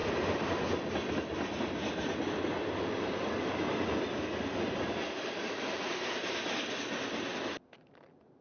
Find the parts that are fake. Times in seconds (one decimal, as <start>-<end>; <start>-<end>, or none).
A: none